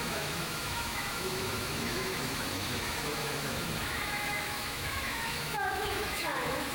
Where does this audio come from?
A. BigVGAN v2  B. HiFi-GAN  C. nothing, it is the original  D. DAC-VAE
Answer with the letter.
D